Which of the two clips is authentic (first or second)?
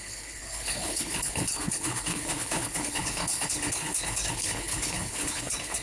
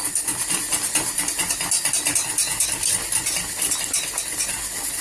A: second